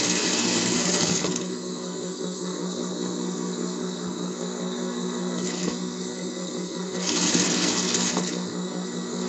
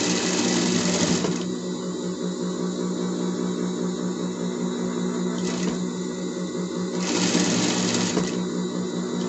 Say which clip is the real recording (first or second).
second